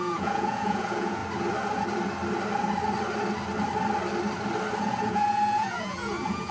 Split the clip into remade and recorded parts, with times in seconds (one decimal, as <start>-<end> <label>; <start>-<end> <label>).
0.0-1.2 remade; 1.2-4.8 recorded; 4.8-6.5 remade